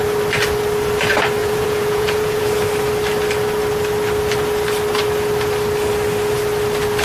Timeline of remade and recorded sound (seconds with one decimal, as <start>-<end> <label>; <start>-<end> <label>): 0.0-1.4 recorded; 1.4-2.4 remade; 2.4-7.0 recorded